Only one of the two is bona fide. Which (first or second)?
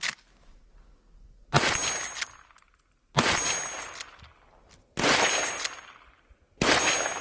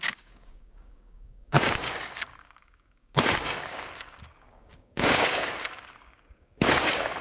first